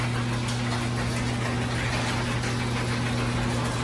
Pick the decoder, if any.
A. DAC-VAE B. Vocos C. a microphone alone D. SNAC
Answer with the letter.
C